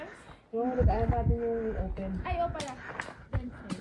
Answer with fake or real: real